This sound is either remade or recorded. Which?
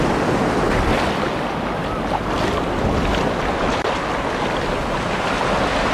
recorded